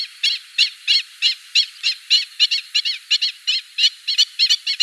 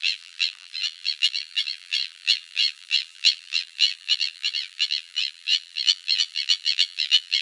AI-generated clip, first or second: second